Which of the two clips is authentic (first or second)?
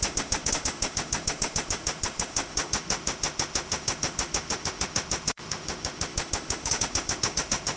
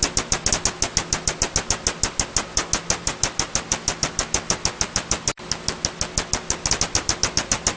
second